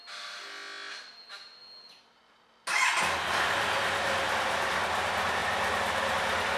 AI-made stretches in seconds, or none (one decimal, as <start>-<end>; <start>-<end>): none